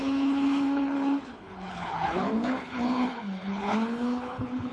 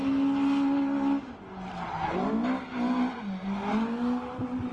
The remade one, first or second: first